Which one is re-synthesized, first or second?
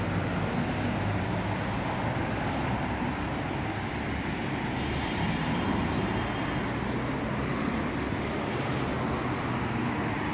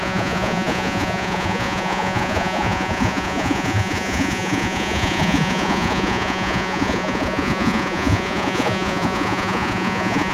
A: second